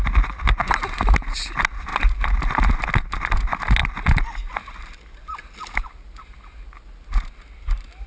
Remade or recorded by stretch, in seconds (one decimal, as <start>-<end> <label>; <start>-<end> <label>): 0.0-8.1 recorded